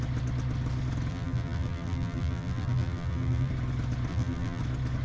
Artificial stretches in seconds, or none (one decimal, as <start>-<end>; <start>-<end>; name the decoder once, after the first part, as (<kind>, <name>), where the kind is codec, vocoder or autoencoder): 1.1-3.5 (vocoder, BigVGAN v2); 4.1-4.6